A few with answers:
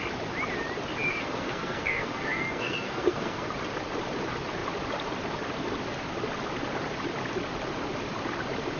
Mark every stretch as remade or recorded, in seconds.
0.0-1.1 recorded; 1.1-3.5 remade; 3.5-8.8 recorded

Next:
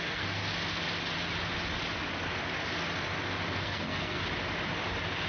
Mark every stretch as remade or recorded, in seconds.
0.0-0.4 remade; 0.4-3.6 recorded; 3.6-4.2 remade; 4.2-5.3 recorded